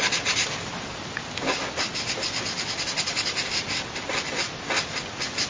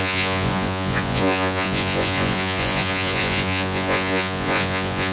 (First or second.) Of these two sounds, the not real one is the second